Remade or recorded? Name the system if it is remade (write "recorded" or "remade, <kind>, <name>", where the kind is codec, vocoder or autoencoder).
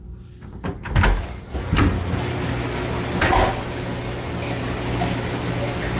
recorded